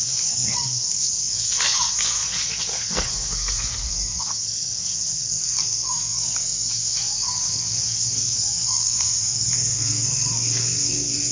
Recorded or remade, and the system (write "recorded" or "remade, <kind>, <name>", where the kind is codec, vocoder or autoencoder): remade, codec, SNAC